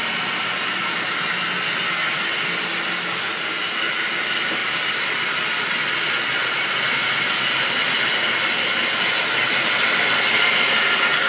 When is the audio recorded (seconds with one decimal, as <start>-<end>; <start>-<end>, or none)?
0.0-11.3